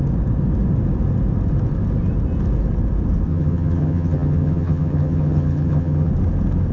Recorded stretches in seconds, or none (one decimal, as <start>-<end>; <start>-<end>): 0.0-3.3; 6.1-6.7